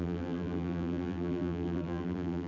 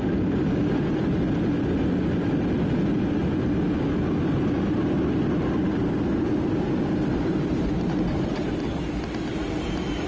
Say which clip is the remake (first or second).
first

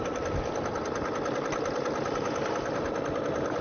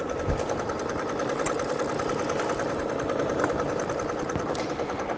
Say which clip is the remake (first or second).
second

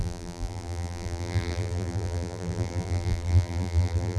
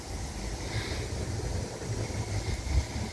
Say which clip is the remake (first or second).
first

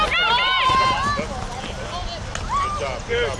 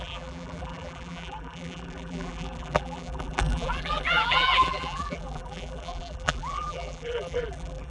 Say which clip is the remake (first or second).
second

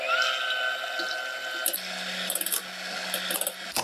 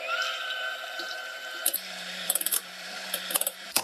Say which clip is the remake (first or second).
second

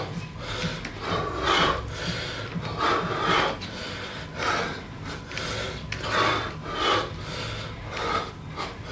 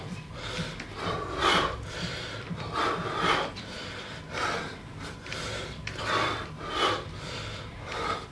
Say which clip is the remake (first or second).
second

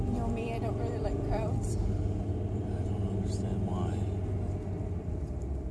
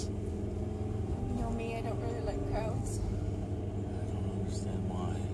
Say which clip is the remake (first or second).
first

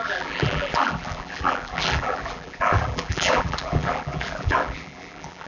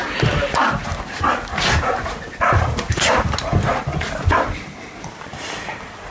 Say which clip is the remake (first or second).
first